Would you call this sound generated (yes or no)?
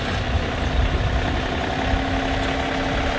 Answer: no